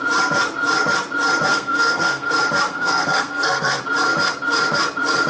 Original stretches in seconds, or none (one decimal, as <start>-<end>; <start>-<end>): 0.0-1.5; 2.3-2.7; 3.8-5.3